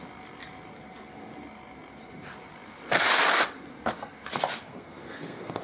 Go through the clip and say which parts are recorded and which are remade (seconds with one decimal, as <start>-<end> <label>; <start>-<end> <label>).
0.0-4.6 recorded; 4.6-5.6 remade